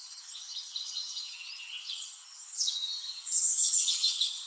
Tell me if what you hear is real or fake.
fake